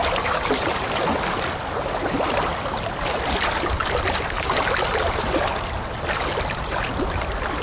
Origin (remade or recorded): recorded